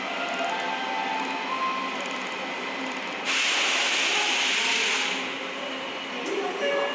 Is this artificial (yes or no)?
no